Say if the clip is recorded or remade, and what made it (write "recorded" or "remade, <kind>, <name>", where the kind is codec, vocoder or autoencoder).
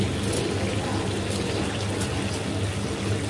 recorded